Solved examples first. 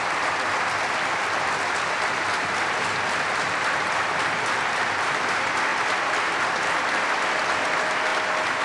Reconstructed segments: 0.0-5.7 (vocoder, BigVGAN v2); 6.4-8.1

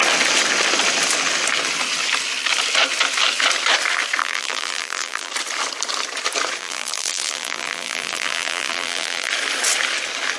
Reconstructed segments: 4.2-5.3 (vocoder, BigVGAN v2); 6.6-9.3

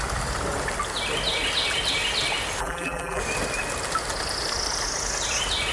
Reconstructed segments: 2.6-3.2 (vocoder, BigVGAN v2)